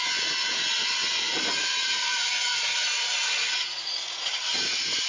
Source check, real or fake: fake